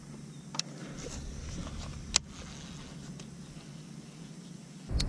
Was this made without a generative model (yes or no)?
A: yes